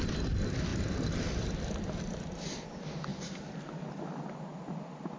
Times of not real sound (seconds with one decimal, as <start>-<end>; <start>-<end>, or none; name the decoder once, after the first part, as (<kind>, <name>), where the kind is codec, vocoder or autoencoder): 0.7-1.5 (vocoder, BigVGAN v2); 3.1-3.7